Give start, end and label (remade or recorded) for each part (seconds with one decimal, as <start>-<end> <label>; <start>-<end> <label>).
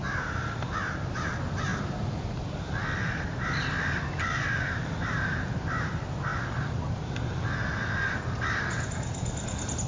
0.0-9.9 recorded